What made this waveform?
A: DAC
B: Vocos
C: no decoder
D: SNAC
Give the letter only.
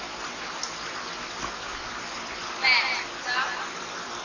C